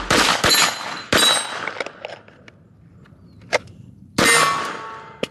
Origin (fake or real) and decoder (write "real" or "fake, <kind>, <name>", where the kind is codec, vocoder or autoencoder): real